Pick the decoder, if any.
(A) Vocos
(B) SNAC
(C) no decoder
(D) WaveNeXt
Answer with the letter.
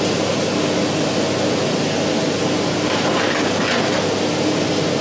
C